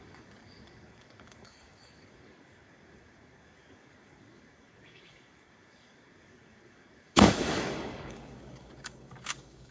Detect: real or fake fake